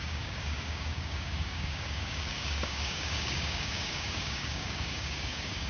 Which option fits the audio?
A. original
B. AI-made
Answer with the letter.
B